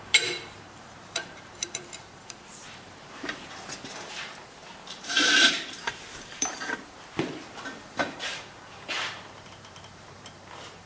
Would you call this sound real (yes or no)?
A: no